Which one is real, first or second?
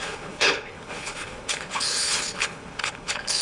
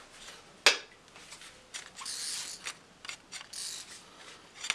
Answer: second